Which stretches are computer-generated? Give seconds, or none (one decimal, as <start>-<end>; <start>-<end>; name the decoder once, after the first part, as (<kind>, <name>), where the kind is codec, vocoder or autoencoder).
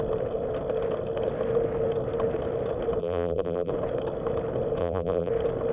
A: 3.0-3.7 (vocoder, BigVGAN v2); 4.8-5.3